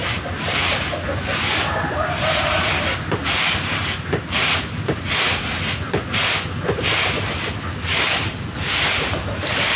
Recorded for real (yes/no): yes